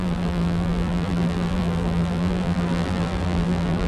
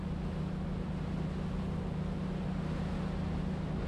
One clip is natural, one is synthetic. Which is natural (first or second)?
second